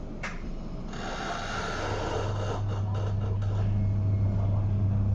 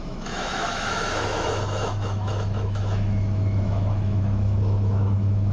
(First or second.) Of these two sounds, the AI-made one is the second